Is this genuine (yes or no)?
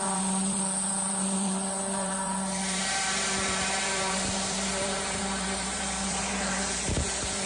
no